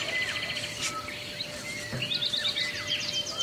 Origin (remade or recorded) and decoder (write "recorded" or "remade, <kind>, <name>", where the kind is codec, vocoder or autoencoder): recorded